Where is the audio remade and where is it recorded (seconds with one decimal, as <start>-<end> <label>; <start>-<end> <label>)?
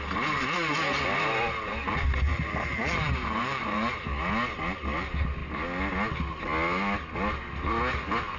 0.0-2.3 recorded; 2.3-4.2 remade; 4.2-8.4 recorded